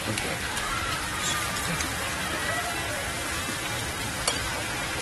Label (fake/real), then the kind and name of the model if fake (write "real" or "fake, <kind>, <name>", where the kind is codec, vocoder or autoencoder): real